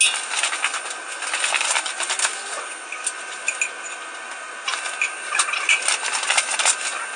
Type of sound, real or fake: real